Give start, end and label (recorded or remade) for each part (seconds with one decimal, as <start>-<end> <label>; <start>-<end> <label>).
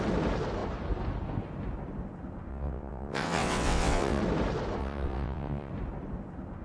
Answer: 0.0-2.5 recorded; 2.5-4.2 remade; 4.2-4.8 recorded; 4.8-5.7 remade; 5.7-6.6 recorded